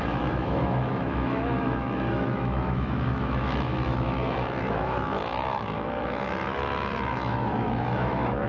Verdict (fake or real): fake